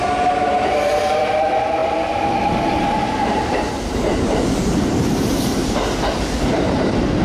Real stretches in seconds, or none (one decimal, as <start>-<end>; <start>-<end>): none